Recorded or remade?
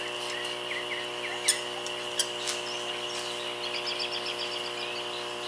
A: recorded